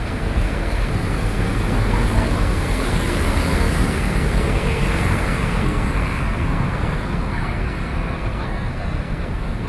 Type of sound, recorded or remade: remade